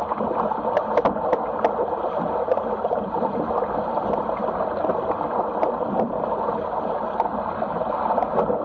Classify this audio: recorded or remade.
recorded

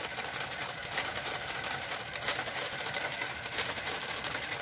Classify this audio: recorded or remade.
remade